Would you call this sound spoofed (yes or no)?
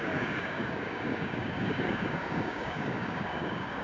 yes